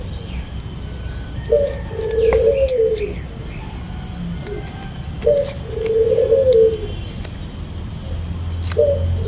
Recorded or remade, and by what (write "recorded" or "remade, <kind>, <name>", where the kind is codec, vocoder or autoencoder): recorded